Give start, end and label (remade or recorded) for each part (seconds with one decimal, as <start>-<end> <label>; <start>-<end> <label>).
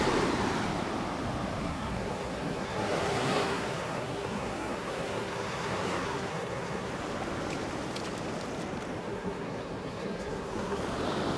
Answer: 0.0-1.6 recorded; 1.6-6.9 remade; 6.9-9.0 recorded; 9.0-10.8 remade; 10.8-11.4 recorded